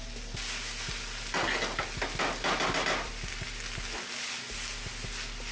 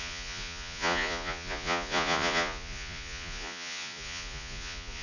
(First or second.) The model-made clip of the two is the second